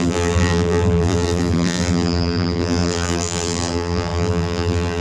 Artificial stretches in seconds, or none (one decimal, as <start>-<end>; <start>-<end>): 0.0-5.0